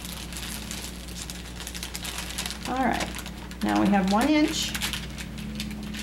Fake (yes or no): no